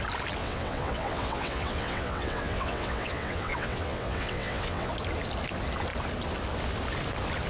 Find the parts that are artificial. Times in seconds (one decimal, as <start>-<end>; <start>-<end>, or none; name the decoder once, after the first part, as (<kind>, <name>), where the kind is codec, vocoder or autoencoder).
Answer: 0.4-4.9 (vocoder, WaveNeXt)